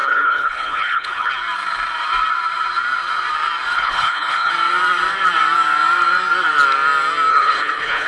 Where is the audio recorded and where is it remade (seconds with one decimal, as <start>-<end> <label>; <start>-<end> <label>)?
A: 0.0-1.3 remade; 1.3-3.7 recorded; 3.7-4.5 remade; 4.5-7.3 recorded; 7.3-8.1 remade